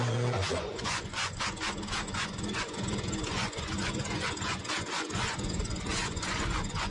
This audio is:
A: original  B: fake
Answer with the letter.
B